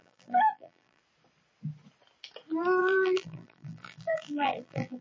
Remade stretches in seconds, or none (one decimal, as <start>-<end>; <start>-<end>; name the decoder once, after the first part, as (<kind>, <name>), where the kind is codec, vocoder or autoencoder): 0.0-1.0 (vocoder, BigVGAN v2); 2.8-5.0